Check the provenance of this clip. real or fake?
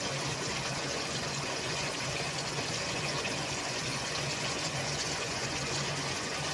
fake